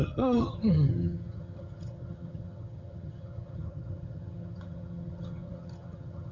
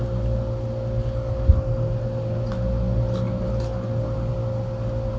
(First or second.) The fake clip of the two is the first